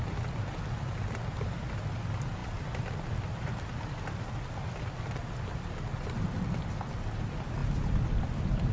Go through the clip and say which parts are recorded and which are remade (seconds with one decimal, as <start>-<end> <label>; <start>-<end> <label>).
0.0-2.4 recorded; 2.4-3.4 remade; 3.4-8.7 recorded